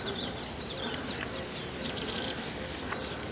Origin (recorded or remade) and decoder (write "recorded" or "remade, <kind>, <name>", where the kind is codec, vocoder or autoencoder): recorded